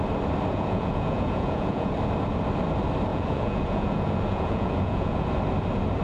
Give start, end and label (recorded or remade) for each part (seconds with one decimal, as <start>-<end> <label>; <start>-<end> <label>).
0.0-0.5 recorded; 0.5-1.9 remade; 1.9-3.1 recorded; 3.1-5.3 remade; 5.3-6.0 recorded